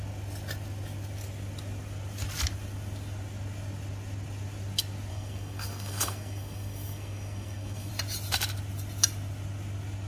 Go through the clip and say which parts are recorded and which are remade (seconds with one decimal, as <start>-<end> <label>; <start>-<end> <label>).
0.0-5.1 recorded; 5.1-7.9 remade; 7.9-10.1 recorded